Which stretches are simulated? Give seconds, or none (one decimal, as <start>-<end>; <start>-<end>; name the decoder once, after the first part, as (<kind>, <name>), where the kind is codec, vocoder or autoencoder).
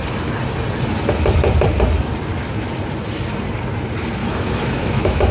4.2-5.3 (autoencoder, DAC-VAE)